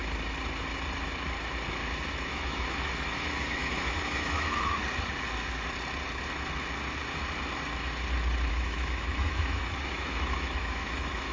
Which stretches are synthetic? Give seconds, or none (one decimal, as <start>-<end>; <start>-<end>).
2.1-4.8; 8.5-11.3